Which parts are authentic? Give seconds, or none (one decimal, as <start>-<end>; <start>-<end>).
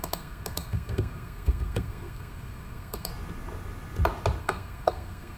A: 3.1-4.4